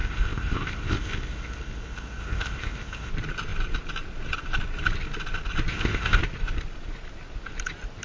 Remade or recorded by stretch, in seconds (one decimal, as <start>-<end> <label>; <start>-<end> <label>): 0.0-3.1 remade; 3.1-5.7 recorded; 5.7-6.2 remade; 6.2-8.0 recorded